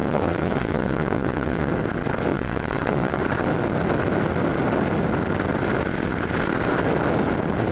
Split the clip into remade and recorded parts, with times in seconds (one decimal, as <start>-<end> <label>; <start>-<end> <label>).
0.0-1.7 remade; 1.7-2.3 recorded; 2.3-3.2 remade; 3.2-7.7 recorded